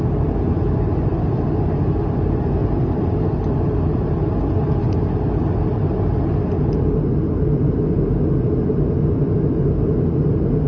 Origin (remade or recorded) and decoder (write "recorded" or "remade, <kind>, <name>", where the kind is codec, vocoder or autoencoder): recorded